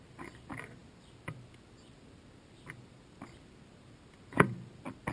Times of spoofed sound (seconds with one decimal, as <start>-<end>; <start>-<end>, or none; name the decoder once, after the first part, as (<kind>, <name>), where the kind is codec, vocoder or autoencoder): none